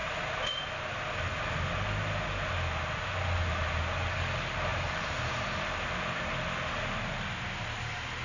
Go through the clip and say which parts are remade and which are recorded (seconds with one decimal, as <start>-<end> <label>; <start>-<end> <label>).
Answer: 0.0-4.7 recorded; 4.7-6.2 remade; 6.2-8.2 recorded